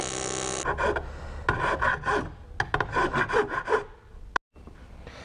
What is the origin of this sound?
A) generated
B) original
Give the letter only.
B